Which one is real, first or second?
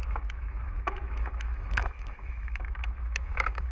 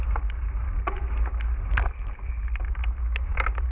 second